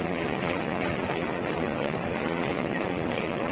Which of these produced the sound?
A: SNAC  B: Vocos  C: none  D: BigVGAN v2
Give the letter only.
B